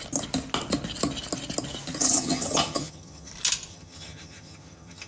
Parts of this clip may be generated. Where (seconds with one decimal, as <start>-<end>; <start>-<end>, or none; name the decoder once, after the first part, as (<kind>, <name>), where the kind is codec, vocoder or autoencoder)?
2.0-3.3 (vocoder, HiFi-GAN); 3.7-5.1

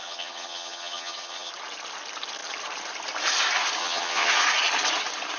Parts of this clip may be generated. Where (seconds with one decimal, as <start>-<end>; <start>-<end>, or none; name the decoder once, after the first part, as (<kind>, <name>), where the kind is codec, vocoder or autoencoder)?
0.0-1.5 (vocoder, HiFi-GAN); 3.8-4.3

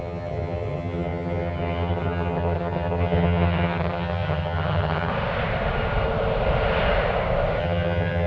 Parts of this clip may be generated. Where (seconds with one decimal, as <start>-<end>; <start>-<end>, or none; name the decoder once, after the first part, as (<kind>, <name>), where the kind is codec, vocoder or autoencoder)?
0.0-5.1 (vocoder, HiFi-GAN); 7.6-8.3

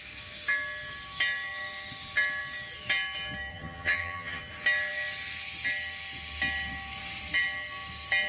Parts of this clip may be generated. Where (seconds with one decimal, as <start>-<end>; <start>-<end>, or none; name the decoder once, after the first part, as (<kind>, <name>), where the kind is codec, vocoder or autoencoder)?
3.5-4.4 (vocoder, HiFi-GAN)

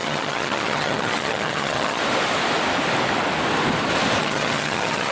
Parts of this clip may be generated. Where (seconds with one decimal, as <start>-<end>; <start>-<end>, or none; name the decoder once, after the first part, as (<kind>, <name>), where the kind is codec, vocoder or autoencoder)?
0.0-2.0 (vocoder, HiFi-GAN); 4.2-5.1

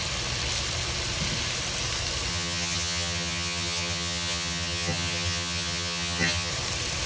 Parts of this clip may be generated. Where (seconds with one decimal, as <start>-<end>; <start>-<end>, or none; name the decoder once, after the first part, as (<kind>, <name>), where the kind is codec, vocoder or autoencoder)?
2.3-6.5 (vocoder, HiFi-GAN)

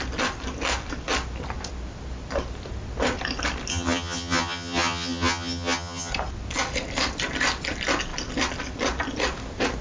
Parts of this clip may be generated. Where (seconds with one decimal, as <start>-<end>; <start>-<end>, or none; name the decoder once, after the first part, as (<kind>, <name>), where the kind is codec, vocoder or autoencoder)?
3.7-6.1 (vocoder, HiFi-GAN)